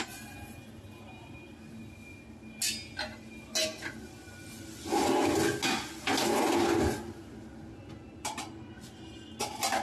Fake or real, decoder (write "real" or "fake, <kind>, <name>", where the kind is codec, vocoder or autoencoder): real